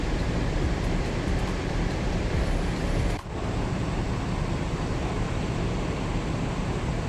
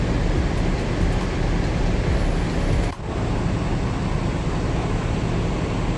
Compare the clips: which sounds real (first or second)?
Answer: second